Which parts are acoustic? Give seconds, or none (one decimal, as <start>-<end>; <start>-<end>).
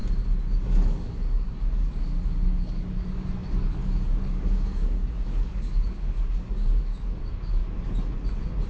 0.0-0.6; 7.6-8.7